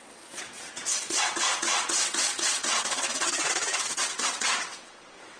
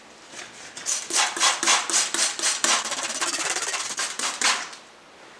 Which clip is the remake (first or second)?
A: first